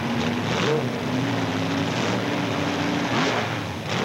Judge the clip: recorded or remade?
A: recorded